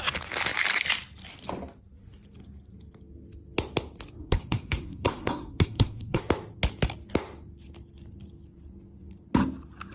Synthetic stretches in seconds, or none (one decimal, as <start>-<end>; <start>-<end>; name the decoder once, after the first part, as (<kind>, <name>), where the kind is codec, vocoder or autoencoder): 4.2-6.2 (codec, SNAC)